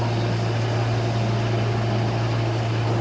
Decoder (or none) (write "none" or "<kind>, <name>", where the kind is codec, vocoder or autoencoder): none